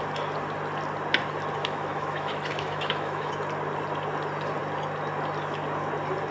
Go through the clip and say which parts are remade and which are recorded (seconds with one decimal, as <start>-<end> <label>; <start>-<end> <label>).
0.0-1.6 recorded; 1.6-3.3 remade; 3.3-6.3 recorded